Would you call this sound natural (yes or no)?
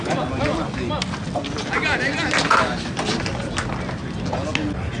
yes